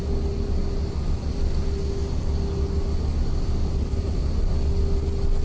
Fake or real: real